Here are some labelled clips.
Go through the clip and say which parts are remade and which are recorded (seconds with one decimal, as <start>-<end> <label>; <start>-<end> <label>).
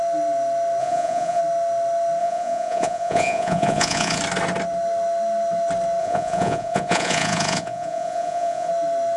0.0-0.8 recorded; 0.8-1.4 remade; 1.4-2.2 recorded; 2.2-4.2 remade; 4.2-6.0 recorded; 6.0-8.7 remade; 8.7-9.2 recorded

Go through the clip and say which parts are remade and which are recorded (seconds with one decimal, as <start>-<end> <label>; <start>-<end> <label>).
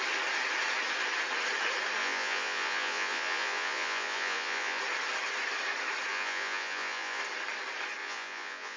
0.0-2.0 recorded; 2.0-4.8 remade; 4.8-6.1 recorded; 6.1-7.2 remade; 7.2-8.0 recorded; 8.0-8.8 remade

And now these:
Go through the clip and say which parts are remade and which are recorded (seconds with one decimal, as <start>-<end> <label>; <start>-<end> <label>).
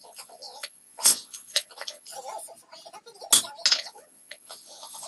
0.0-2.1 remade; 2.1-3.7 recorded; 3.7-5.1 remade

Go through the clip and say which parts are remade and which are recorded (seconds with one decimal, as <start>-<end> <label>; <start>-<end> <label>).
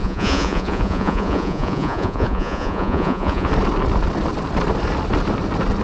0.0-3.5 remade; 3.5-5.8 recorded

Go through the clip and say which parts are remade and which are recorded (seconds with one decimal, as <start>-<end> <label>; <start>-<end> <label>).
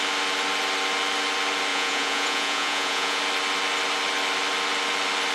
0.0-1.7 recorded; 1.7-3.2 remade; 3.2-5.3 recorded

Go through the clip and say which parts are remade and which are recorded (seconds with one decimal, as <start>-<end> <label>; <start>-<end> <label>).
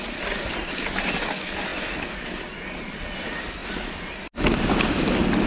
0.0-5.5 recorded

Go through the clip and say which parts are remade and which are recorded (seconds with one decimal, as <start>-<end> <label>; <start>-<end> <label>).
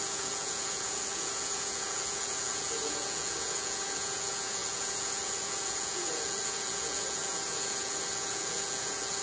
0.0-9.2 remade